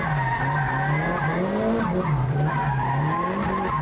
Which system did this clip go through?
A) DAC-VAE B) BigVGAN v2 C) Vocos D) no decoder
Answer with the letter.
D